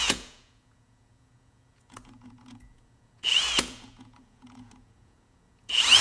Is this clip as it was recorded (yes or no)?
no